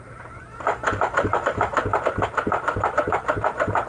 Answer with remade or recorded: remade